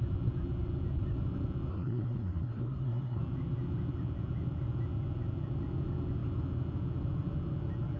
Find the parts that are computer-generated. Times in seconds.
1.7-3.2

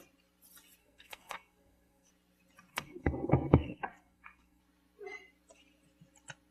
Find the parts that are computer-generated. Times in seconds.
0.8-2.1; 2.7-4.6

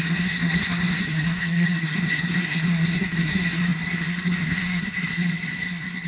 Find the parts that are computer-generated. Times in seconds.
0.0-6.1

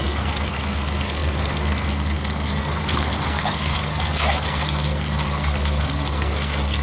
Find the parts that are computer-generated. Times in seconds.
0.0-6.8

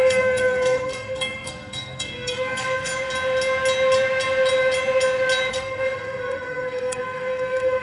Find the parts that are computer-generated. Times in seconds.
0.0-2.9; 5.5-7.8

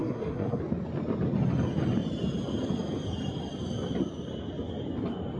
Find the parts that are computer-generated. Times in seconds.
0.0-0.6

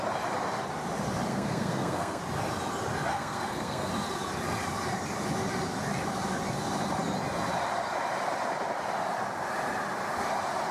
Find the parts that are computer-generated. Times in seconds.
1.3-2.2; 3.1-3.9